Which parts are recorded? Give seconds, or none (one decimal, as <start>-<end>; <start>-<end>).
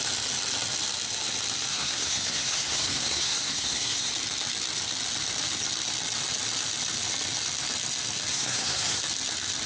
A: 0.0-1.7; 4.1-8.3; 9.0-9.7